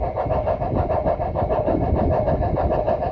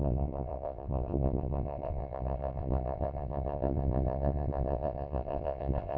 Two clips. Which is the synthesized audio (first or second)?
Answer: second